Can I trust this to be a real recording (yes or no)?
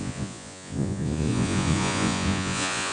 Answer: no